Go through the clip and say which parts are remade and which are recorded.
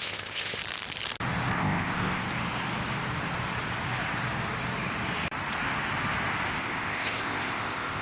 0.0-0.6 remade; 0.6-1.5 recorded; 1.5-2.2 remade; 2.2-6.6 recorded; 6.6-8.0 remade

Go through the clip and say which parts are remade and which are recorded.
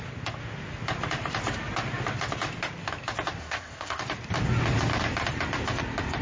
0.0-3.4 recorded; 3.4-4.0 remade; 4.0-6.2 recorded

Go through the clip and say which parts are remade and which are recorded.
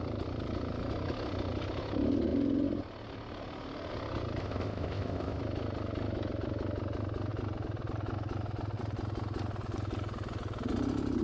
0.0-4.4 recorded; 4.4-5.4 remade; 5.4-11.2 recorded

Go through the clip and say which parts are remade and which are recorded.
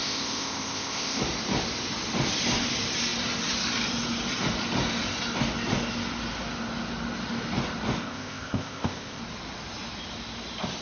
0.0-1.2 remade; 1.2-8.0 recorded; 8.0-9.2 remade; 9.2-10.8 recorded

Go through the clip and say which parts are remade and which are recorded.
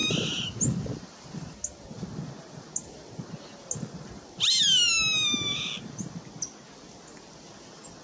0.0-8.0 recorded